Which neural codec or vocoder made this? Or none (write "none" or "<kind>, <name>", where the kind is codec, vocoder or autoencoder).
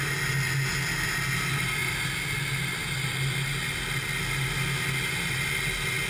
none